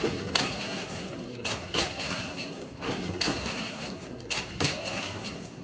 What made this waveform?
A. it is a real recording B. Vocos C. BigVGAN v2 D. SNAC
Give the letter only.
D